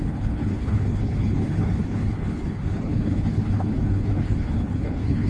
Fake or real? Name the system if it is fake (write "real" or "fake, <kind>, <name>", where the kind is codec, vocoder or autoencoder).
fake, codec, HILCodec